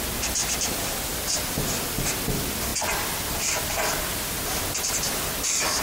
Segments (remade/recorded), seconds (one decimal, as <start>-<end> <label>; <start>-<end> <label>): 0.0-0.4 recorded; 0.4-2.1 remade; 2.1-5.8 recorded